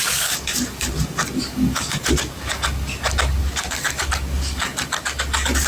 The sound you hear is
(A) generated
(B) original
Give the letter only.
A